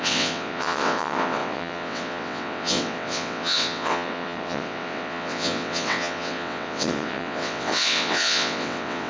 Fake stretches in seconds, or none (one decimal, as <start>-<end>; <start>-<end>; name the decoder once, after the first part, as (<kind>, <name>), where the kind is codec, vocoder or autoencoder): 0.0-9.1 (vocoder, WaveNeXt)